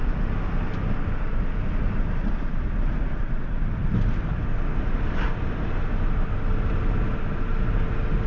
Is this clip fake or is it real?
real